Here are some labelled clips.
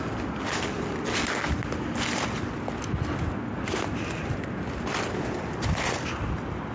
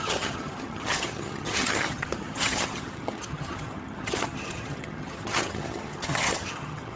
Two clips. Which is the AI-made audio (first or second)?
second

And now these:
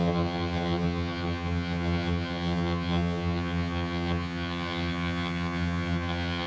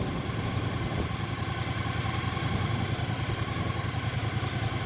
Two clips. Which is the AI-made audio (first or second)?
first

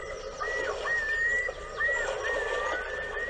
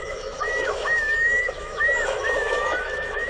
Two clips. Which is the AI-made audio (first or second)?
second